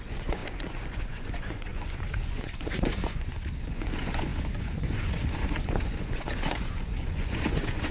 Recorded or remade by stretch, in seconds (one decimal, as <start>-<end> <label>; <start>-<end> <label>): 0.0-7.9 remade